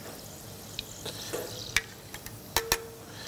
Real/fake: real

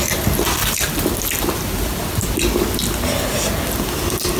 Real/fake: real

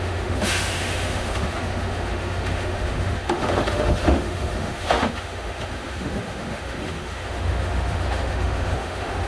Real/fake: fake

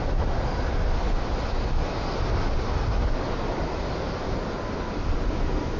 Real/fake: real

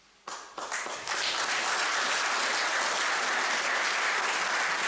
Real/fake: real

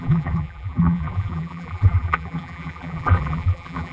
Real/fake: fake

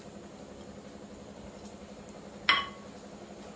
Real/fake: real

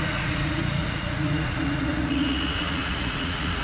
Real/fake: fake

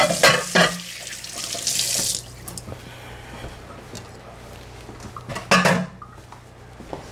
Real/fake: real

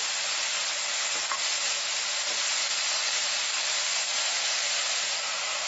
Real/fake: real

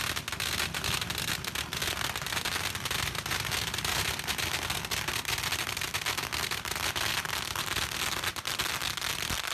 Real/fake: real